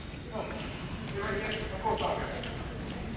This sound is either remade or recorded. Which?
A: recorded